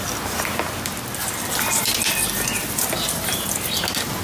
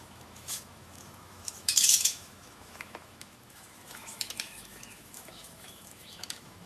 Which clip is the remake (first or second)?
second